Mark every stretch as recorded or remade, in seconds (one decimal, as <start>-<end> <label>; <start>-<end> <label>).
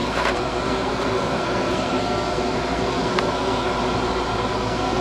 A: 0.0-3.7 remade; 3.7-4.4 recorded; 4.4-5.0 remade